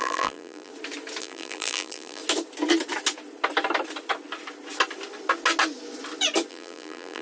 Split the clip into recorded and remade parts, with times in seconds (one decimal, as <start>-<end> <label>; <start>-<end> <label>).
0.0-0.7 remade; 0.7-1.2 recorded; 1.2-2.2 remade; 2.2-6.5 recorded; 6.5-7.2 remade